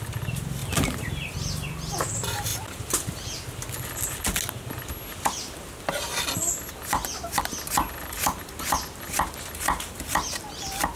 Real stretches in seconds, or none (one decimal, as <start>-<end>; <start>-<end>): 0.0-0.6; 2.1-11.0